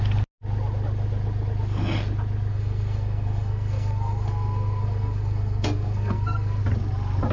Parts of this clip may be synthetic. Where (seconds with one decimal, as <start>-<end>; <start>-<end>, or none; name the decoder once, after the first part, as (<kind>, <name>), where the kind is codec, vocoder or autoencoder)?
2.5-6.6 (codec, SNAC)